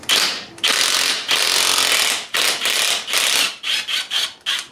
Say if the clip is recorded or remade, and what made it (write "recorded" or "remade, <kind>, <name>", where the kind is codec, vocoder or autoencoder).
recorded